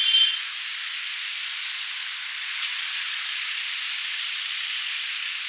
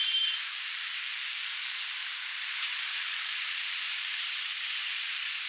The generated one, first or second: second